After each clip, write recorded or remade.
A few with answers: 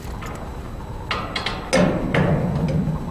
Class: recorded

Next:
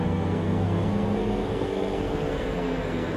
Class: remade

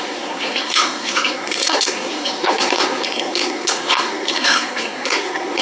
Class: remade